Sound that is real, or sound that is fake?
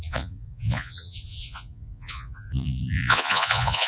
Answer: fake